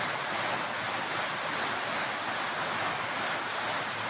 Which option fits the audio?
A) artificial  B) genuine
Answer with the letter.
B